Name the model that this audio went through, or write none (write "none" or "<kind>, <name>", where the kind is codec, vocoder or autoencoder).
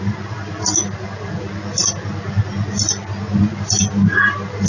none